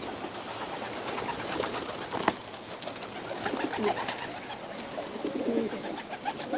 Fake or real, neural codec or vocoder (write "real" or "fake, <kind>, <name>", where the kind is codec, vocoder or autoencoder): real